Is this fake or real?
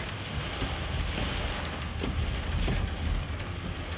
real